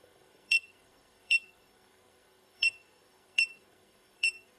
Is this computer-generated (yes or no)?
yes